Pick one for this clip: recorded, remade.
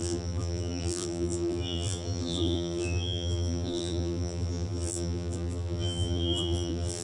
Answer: remade